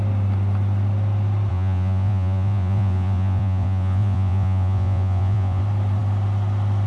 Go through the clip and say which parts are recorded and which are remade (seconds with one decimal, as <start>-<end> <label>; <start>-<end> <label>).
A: 0.0-1.5 recorded; 1.5-5.6 remade; 5.6-6.9 recorded